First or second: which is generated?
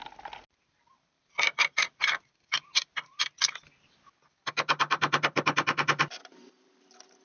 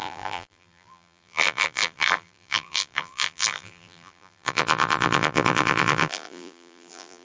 second